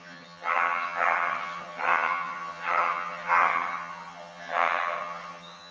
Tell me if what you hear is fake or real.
fake